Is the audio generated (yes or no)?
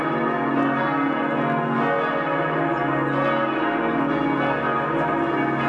no